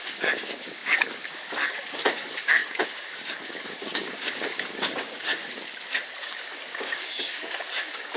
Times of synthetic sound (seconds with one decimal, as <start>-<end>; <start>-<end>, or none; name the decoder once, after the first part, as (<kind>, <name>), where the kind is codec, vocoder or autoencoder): 0.0-5.4 (codec, DAC); 6.2-8.2